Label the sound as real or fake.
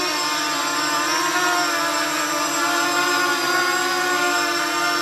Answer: real